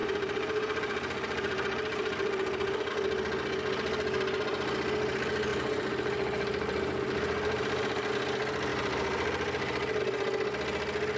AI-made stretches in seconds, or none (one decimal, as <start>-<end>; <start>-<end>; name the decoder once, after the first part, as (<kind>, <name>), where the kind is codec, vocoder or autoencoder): 0.0-2.9 (vocoder, BigVGAN v2); 5.5-8.1; 8.7-10.0